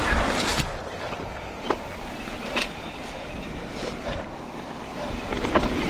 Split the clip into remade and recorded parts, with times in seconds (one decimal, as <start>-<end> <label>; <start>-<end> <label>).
0.0-5.9 recorded